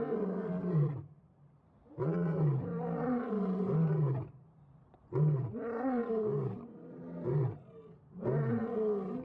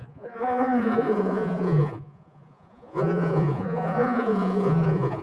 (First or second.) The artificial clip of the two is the second